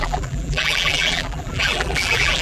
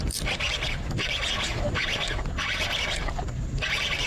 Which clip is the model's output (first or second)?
first